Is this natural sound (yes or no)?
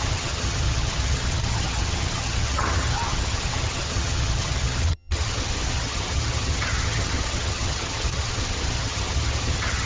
no